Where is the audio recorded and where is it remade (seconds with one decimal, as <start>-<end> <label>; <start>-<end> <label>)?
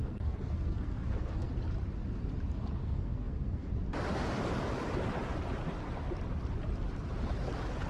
0.0-1.5 remade; 1.5-2.8 recorded; 2.8-3.7 remade; 3.7-7.9 recorded